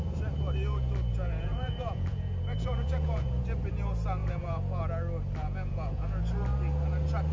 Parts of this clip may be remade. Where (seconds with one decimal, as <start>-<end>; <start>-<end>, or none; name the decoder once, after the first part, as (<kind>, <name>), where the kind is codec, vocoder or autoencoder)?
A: 1.1-3.4 (vocoder, Vocos); 4.2-4.8; 5.4-6.2